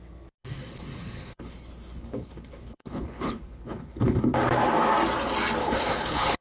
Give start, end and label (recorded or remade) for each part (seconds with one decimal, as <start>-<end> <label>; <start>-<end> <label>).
0.0-0.4 recorded; 0.4-4.2 remade; 4.2-5.6 recorded; 5.6-6.4 remade